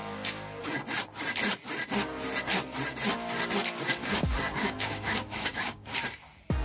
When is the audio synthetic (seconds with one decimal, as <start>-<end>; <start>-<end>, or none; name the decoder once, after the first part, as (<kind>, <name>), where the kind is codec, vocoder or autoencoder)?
0.0-0.6 (codec, DAC); 4.0-6.0